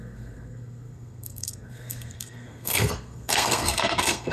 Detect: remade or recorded remade